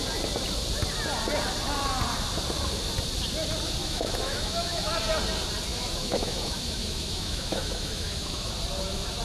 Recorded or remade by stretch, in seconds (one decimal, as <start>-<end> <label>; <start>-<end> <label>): 0.0-3.8 recorded; 3.8-4.9 remade; 4.9-5.7 recorded; 5.7-8.5 remade; 8.5-9.2 recorded